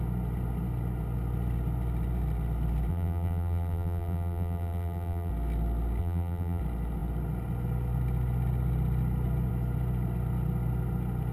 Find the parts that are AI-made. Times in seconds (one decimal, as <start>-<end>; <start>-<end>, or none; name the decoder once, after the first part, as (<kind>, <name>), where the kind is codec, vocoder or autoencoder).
2.9-5.3 (vocoder, BigVGAN v2); 6.0-6.6